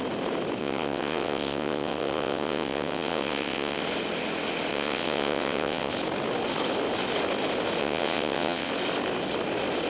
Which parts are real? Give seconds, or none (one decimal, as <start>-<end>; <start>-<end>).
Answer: 0.0-0.6; 3.8-4.7; 5.9-7.8; 8.7-9.9